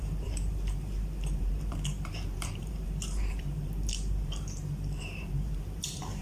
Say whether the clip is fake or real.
fake